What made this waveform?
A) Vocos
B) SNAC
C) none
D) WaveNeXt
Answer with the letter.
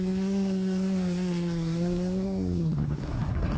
B